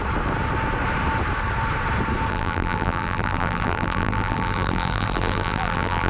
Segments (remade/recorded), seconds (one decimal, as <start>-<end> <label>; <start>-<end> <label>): 0.0-2.3 recorded; 2.3-6.1 remade